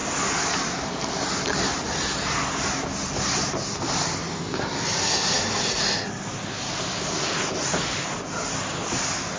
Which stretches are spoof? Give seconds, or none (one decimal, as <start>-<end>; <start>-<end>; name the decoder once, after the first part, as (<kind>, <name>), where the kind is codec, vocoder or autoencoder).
none